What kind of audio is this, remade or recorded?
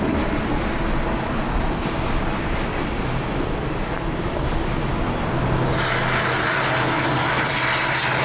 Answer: recorded